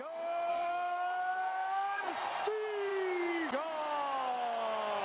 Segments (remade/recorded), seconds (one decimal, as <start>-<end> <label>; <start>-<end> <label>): 0.0-0.5 recorded; 0.5-2.1 remade; 2.1-5.0 recorded